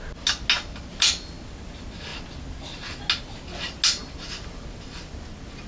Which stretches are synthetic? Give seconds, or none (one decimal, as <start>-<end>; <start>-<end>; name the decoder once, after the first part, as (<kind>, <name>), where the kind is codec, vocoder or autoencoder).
none